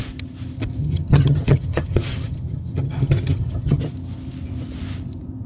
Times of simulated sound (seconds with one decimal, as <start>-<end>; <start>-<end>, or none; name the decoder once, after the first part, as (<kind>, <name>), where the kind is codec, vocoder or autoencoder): 0.8-3.8 (vocoder, HiFi-GAN)